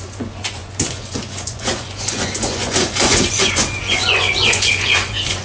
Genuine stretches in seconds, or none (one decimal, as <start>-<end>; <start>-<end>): none